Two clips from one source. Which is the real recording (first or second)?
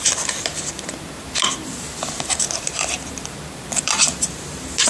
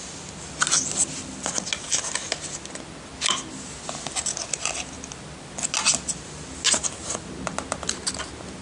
second